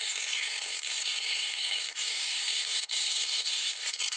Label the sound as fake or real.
fake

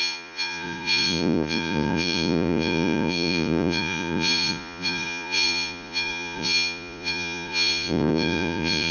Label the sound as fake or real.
fake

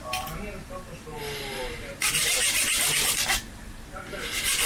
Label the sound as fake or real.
real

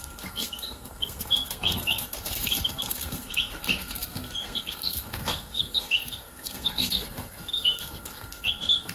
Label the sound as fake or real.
fake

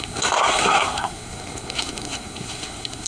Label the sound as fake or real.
fake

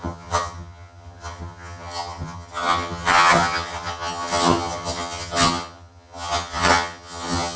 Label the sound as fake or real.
fake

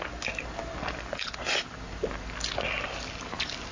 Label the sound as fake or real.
real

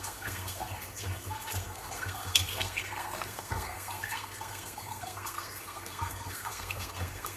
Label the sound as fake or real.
fake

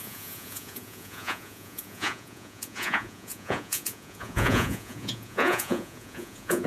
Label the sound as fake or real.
fake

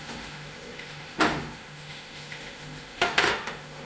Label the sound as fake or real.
fake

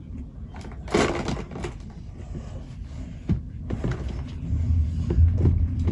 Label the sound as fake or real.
real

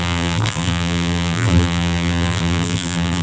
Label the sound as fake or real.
fake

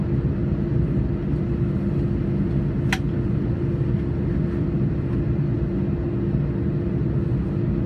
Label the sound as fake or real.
real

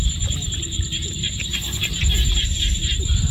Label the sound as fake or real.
fake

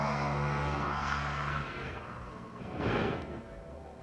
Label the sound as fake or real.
fake